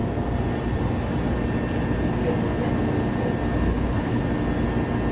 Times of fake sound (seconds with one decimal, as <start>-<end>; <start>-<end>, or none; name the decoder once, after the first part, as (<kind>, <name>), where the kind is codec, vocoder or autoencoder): 3.7-4.2 (codec, HILCodec)